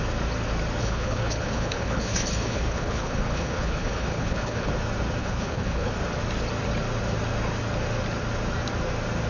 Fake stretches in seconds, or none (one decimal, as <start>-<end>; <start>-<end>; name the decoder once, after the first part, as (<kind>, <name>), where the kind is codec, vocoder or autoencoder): 0.8-4.7 (codec, HILCodec); 5.2-5.9

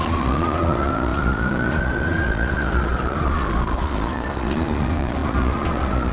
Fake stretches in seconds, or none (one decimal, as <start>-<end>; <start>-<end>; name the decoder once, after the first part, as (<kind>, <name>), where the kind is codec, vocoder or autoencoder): 0.0-6.1 (vocoder, Vocos)

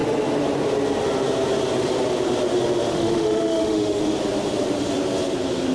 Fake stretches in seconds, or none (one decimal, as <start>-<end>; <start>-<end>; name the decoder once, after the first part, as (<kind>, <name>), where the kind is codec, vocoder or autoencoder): 2.9-4.0 (autoencoder, DAC-VAE)

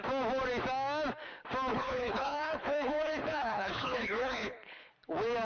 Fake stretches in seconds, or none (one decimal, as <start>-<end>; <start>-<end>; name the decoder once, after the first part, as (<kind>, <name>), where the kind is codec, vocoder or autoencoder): 1.7-4.9 (codec, HILCodec)